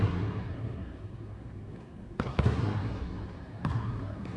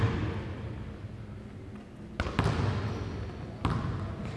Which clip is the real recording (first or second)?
second